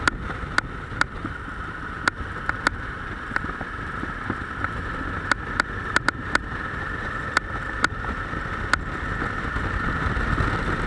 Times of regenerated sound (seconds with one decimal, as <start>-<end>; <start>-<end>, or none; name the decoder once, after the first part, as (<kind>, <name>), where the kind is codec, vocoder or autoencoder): 0.0-1.2 (vocoder, BigVGAN v2); 5.9-10.9